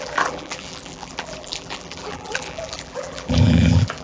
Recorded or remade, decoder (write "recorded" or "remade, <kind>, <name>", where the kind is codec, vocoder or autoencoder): remade, vocoder, BigVGAN v2